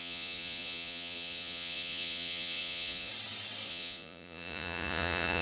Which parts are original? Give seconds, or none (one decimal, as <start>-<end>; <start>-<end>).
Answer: 3.1-3.7